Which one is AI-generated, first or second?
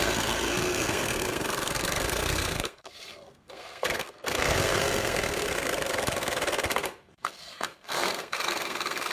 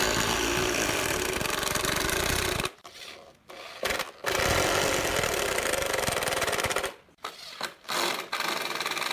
first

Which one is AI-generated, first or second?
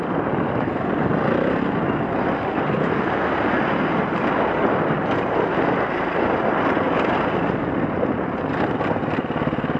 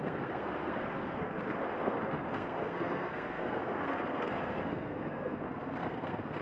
second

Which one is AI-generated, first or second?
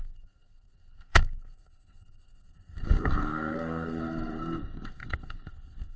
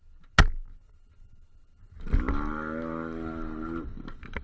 first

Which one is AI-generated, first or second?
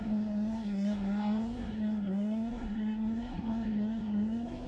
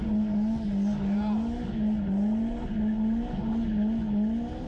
first